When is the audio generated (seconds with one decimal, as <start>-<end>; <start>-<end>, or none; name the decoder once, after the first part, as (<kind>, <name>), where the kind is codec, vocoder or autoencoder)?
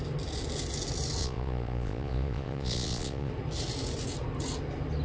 1.2-3.3 (vocoder, Vocos)